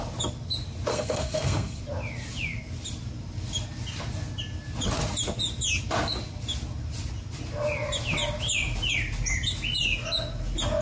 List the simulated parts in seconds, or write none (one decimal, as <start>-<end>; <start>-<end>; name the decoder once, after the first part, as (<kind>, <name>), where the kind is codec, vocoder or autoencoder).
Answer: 0.9-1.8 (codec, SNAC)

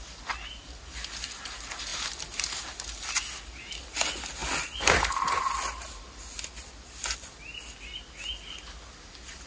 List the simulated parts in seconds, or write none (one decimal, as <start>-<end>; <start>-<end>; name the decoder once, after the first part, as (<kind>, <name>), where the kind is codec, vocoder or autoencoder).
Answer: none

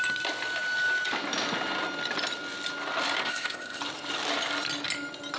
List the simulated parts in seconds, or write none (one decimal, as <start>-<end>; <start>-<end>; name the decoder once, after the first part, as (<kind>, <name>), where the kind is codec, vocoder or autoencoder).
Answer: 3.2-3.8 (codec, ZipCodec)

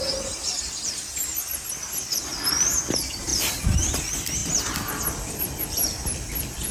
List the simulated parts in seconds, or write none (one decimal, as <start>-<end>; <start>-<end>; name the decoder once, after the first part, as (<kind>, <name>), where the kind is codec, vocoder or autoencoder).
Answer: 0.0-1.3 (vocoder, BigVGAN v2); 2.0-4.4; 4.9-6.7

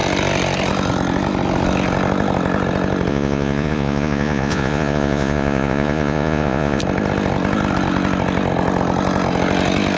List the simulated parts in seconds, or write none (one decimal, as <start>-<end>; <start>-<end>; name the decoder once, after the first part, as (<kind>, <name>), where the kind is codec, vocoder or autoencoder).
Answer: 3.1-6.8 (vocoder, Vocos)

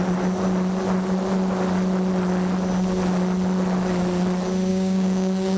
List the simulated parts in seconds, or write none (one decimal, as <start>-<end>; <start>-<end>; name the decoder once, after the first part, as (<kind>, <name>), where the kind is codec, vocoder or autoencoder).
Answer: 4.7-5.6 (codec, DAC)

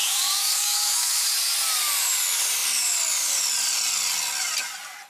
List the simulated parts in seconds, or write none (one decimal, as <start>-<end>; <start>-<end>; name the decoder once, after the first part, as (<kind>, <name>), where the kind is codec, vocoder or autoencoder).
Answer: 0.0-1.2 (codec, DAC)